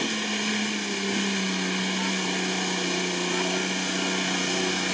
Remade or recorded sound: recorded